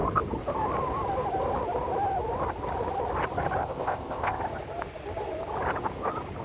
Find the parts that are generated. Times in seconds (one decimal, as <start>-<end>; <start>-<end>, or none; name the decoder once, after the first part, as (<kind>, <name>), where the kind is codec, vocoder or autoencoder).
3.6-4.4 (codec, ZipCodec)